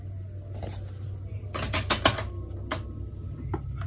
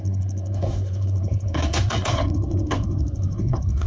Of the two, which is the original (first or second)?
first